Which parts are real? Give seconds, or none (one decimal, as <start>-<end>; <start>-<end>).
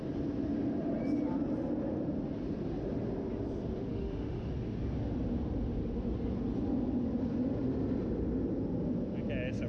0.0-3.9; 4.5-9.7